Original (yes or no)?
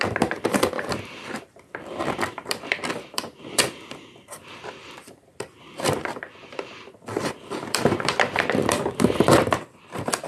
no